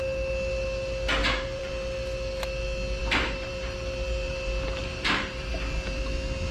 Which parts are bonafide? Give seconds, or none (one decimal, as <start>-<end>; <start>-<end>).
0.0-1.2; 1.7-3.0; 5.5-6.5